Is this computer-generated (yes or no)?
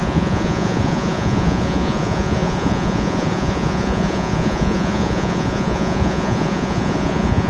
yes